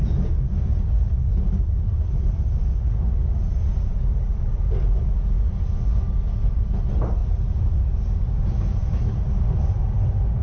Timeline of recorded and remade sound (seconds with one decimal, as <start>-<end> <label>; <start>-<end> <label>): 0.0-10.4 recorded